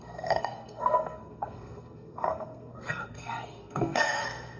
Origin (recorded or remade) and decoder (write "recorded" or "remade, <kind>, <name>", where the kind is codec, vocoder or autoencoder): remade, codec, SNAC